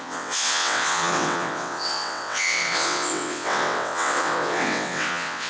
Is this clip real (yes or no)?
no